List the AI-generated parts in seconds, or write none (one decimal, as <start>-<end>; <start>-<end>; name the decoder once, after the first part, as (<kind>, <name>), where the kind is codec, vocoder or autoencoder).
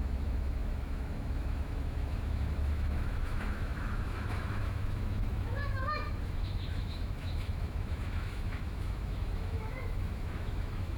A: 0.0-11.0 (autoencoder, DAC-VAE)